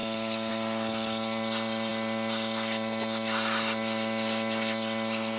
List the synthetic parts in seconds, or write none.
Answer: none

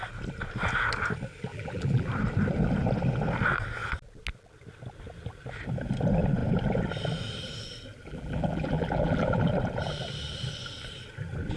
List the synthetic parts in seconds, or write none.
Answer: 1.5-2.1 (vocoder, BigVGAN v2); 8.1-9.5

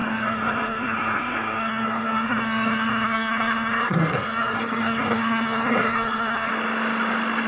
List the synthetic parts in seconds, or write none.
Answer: 0.0-6.5 (codec, SNAC)

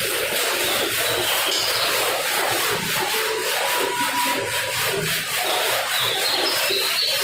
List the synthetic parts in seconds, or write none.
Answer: none

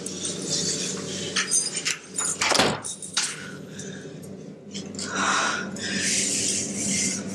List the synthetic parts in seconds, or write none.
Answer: 3.1-3.8 (codec, HILCodec)

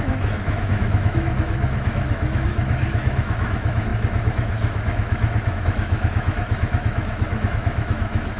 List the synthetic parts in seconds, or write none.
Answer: 0.0-8.4 (autoencoder, DAC-VAE)

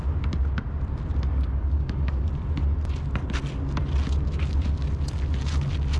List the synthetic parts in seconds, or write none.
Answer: 1.3-2.3 (codec, DAC)